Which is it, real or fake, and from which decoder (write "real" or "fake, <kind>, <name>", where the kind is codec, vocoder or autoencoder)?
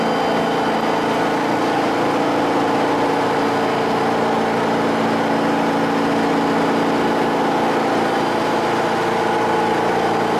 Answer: real